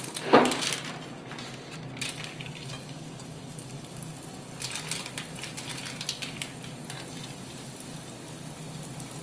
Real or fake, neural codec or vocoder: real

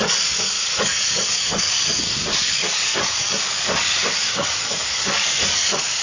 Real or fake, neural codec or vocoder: fake, codec, DAC